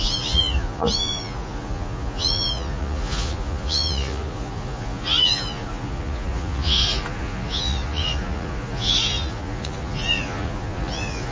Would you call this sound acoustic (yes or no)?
no